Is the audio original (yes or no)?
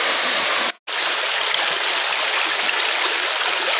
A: yes